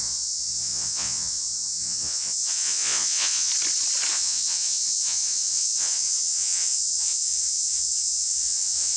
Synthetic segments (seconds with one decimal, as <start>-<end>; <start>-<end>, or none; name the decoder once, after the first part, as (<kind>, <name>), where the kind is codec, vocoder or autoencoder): 0.0-3.5 (vocoder, Vocos); 4.1-9.0